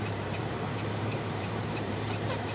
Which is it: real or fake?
fake